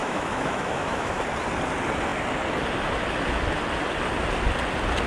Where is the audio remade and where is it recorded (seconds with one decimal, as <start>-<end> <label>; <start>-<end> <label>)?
0.0-1.2 remade; 1.2-5.1 recorded